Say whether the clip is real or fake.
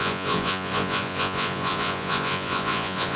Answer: fake